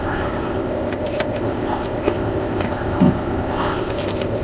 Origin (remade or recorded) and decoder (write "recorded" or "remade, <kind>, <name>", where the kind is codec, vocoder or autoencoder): remade, codec, ZipCodec